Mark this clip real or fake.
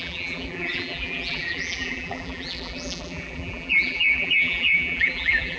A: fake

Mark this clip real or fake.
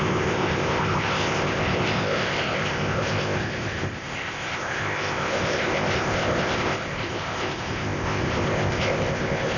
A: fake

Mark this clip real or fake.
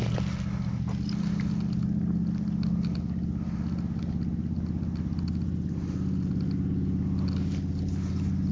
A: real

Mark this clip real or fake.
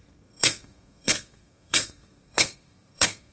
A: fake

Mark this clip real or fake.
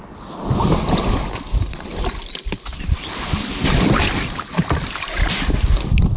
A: real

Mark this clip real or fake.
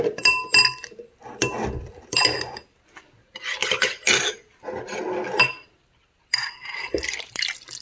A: real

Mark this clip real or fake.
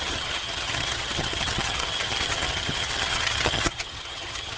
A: fake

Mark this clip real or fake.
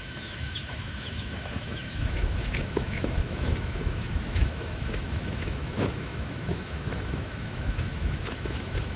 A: fake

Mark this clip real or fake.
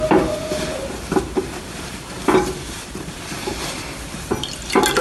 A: real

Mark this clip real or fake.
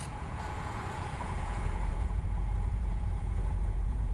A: fake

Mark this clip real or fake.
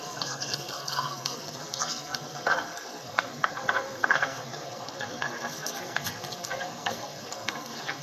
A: fake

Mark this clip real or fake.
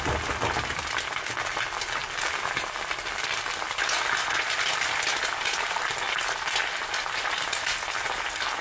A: real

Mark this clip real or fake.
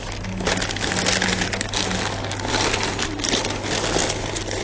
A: real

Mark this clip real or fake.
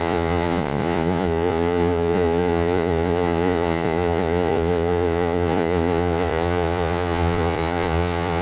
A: fake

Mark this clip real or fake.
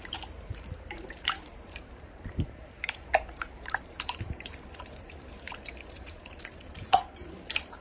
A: fake